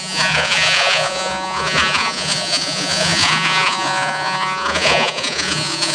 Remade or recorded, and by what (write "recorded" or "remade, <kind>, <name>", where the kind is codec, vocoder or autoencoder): remade, vocoder, Vocos